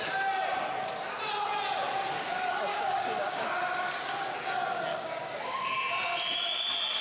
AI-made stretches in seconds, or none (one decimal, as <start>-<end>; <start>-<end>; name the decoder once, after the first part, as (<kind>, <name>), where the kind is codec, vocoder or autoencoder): 2.7-3.5 (codec, DAC); 4.9-5.9